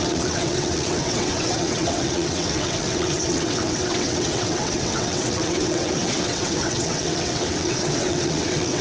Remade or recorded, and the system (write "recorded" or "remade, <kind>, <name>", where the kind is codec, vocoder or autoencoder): remade, vocoder, WaveNeXt